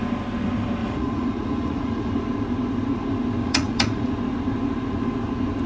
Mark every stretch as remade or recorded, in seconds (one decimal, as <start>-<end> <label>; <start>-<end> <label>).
0.0-0.8 recorded; 0.8-2.1 remade; 2.1-3.4 recorded; 3.4-4.1 remade; 4.1-5.7 recorded